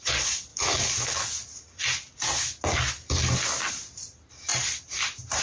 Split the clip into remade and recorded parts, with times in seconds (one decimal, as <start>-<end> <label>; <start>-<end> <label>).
0.0-0.5 remade; 0.5-3.7 recorded; 3.7-5.4 remade